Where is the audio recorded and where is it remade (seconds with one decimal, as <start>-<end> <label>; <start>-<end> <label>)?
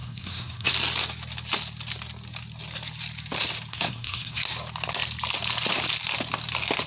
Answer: 0.0-0.7 remade; 0.7-3.7 recorded; 3.7-4.4 remade; 4.4-6.9 recorded